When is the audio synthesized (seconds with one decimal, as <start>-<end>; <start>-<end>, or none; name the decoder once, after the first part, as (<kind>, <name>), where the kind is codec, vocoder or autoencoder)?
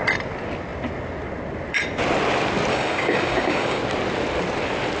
2.7-3.8 (codec, DAC)